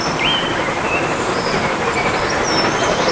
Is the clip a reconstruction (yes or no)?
yes